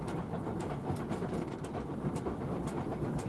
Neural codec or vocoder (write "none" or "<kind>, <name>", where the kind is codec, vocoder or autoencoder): none